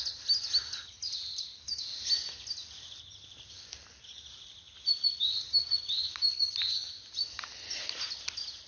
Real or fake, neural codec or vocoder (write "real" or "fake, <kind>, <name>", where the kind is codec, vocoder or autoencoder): real